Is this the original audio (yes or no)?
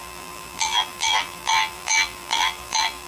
no